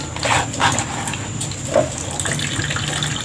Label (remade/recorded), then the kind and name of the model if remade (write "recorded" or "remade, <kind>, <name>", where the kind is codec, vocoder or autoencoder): recorded